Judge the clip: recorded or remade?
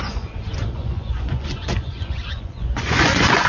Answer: remade